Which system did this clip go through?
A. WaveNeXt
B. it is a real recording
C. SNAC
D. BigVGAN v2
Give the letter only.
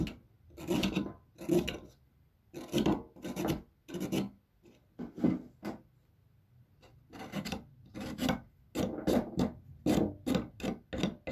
B